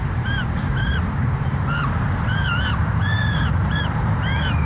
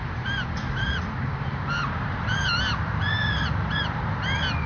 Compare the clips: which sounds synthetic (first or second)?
first